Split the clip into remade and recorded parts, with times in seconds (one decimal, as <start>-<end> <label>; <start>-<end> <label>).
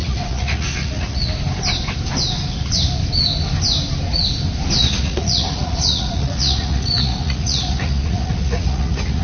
0.0-1.3 remade; 1.3-4.8 recorded; 4.8-9.2 remade